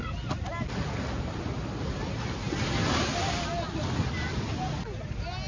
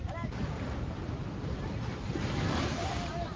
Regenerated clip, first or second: second